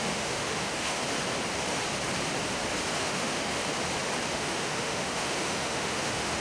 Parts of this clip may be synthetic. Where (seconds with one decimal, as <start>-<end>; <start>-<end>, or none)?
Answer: 0.0-1.0; 3.0-3.6; 4.3-6.4